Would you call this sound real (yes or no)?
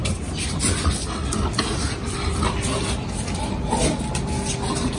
yes